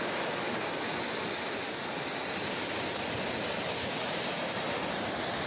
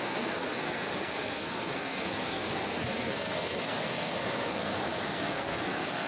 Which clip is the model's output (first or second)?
second